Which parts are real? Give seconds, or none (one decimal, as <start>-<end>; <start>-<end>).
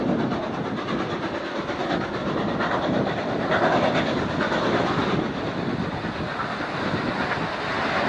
0.0-2.2; 3.7-8.1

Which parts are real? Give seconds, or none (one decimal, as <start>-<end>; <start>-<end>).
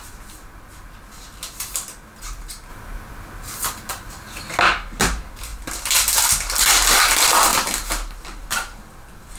0.0-9.4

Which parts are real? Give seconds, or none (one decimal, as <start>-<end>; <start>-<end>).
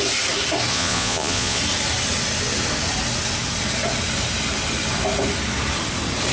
0.0-0.7; 1.6-6.3